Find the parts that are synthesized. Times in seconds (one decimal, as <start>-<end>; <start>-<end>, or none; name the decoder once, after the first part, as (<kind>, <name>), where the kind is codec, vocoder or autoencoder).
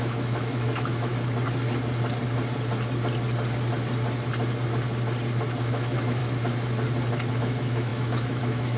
0.0-1.1 (autoencoder, DAC-VAE); 5.6-6.2; 7.3-8.8